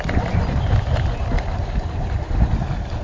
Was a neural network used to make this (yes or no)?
no